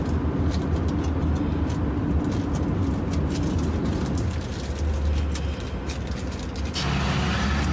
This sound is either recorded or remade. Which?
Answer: recorded